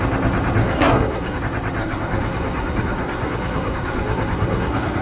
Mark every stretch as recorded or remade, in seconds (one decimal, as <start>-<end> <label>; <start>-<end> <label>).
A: 0.0-0.6 recorded; 0.6-1.4 remade; 1.4-1.8 recorded; 1.8-5.0 remade